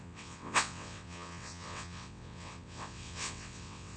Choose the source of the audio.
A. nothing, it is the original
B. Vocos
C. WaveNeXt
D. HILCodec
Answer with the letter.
C